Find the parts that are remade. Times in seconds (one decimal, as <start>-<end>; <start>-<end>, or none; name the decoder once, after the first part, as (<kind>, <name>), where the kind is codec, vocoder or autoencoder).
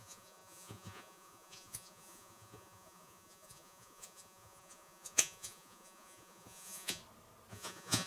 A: 0.0-7.0 (vocoder, Vocos); 7.5-8.1